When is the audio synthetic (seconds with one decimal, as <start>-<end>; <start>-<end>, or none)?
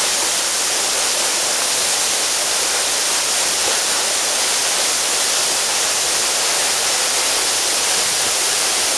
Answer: none